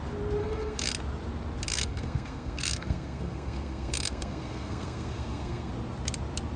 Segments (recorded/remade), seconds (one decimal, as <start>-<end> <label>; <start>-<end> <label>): 0.0-0.4 recorded; 0.4-0.9 remade; 0.9-1.7 recorded; 1.7-5.7 remade; 5.7-6.6 recorded